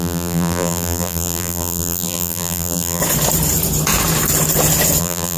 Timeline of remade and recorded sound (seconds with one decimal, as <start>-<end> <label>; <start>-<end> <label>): 0.0-3.0 remade; 3.0-5.0 recorded; 5.0-5.4 remade